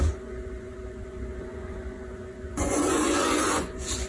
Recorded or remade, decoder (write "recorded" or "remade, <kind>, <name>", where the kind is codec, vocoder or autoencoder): remade, vocoder, Vocos